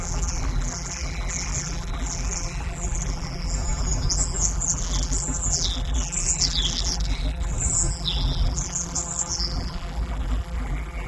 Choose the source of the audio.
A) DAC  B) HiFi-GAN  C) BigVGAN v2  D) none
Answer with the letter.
C